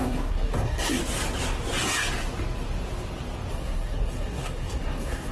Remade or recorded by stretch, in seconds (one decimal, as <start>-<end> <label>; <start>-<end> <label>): 0.0-1.0 remade; 1.0-3.5 recorded; 3.5-5.3 remade